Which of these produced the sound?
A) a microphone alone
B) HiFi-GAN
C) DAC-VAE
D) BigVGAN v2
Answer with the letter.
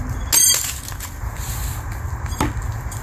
A